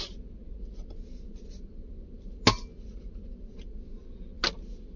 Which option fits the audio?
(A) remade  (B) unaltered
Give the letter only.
B